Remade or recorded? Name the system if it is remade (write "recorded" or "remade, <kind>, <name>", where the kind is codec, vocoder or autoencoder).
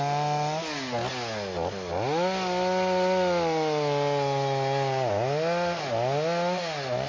recorded